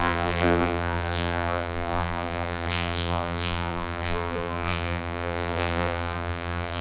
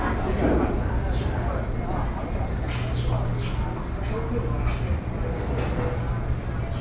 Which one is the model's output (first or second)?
first